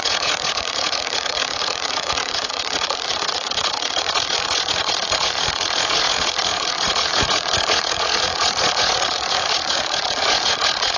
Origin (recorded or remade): remade